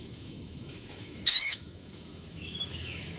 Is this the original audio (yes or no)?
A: no